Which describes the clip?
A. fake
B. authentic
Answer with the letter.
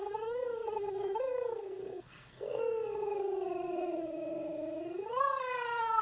A